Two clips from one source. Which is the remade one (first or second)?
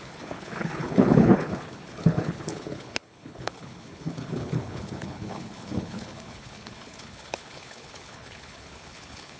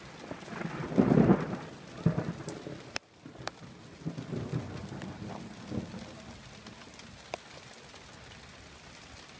first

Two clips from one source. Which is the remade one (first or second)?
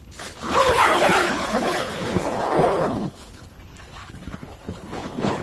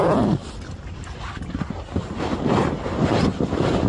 first